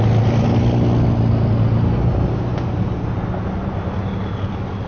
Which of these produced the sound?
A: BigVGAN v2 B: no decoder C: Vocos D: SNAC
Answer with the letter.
B